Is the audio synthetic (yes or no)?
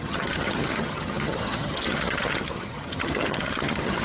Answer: yes